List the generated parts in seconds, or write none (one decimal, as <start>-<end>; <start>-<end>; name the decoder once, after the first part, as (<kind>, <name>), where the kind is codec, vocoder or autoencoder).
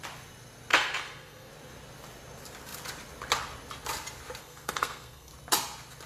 0.7-1.5 (codec, SNAC); 4.4-5.3